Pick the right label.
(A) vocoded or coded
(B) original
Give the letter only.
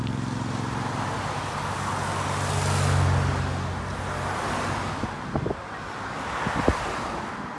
B